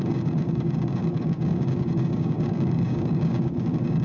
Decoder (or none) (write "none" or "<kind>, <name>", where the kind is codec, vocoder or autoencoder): codec, DAC